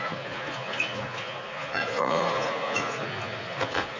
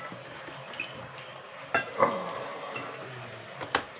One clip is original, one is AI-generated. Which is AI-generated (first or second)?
first